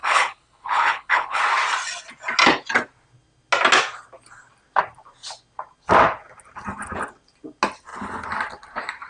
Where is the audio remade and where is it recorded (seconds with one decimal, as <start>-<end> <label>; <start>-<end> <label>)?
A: 0.0-1.4 remade; 1.4-9.1 recorded